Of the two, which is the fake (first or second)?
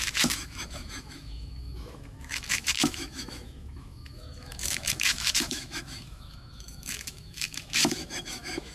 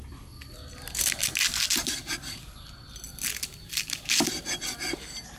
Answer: first